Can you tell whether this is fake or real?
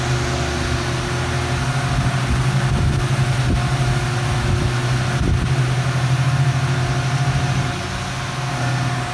real